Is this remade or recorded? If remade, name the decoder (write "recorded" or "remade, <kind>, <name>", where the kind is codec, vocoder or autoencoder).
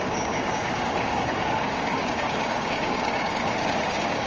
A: remade, codec, DAC